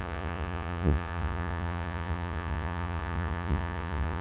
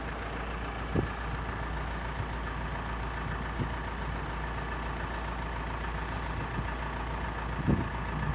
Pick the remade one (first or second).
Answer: first